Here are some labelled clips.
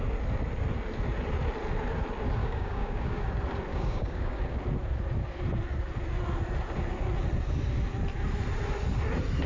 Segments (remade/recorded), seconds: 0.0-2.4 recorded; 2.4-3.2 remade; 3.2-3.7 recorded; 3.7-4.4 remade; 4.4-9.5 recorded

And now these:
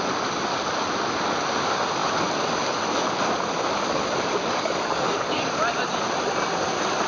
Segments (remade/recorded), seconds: 0.0-4.4 recorded; 4.4-5.5 remade; 5.5-7.1 recorded

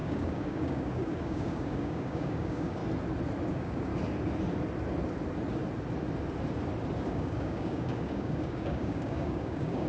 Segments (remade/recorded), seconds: 0.0-2.8 remade; 2.8-3.5 recorded; 3.5-3.9 remade; 3.9-7.1 recorded; 7.1-9.9 remade

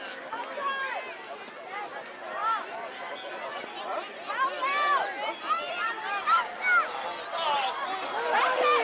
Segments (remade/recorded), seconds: 0.0-8.8 recorded

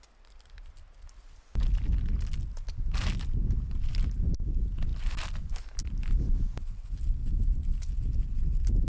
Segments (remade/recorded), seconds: 0.0-8.9 recorded

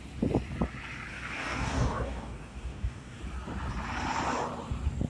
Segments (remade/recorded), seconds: 0.0-1.1 recorded; 1.1-3.2 remade; 3.2-5.1 recorded

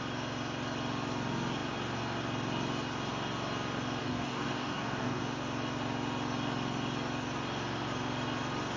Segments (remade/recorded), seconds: 0.0-4.0 recorded; 4.0-5.2 remade; 5.2-8.8 recorded